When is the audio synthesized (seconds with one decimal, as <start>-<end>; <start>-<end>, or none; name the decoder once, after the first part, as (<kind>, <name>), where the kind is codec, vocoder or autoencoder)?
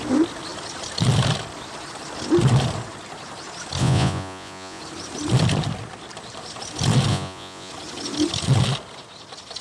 3.8-4.8 (vocoder, Vocos); 7.1-7.7